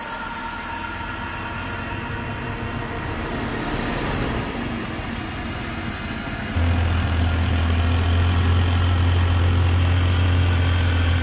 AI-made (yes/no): no